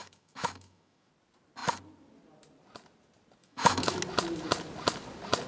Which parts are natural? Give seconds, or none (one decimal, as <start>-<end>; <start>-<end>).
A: 1.1-3.4; 4.0-5.5